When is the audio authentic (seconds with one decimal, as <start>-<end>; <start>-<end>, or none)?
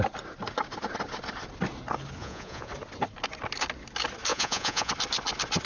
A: 0.0-2.2; 2.7-4.3; 4.9-5.7